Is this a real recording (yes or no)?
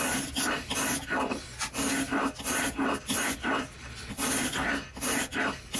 yes